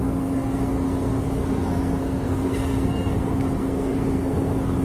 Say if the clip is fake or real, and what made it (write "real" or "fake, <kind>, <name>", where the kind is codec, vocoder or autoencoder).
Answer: fake, codec, SNAC